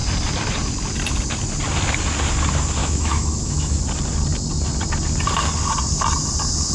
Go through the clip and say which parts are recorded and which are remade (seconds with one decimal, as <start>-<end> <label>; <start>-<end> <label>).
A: 0.0-2.8 recorded; 2.8-3.8 remade; 3.8-6.7 recorded